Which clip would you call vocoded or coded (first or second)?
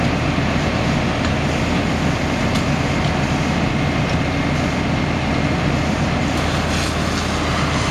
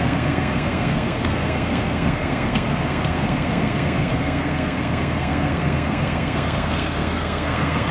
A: second